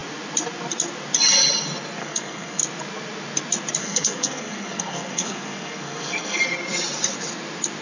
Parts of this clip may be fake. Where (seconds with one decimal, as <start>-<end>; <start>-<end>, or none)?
2.0-2.6; 3.8-6.4